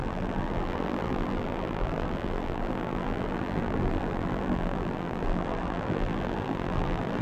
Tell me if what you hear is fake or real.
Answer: fake